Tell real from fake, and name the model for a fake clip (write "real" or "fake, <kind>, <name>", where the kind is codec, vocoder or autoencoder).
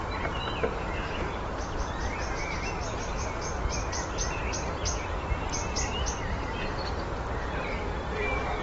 fake, vocoder, BigVGAN v2